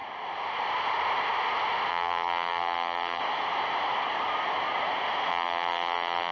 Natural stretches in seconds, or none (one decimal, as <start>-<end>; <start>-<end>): 0.0-1.9; 3.2-5.3